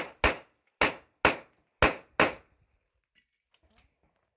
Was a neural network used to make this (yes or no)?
no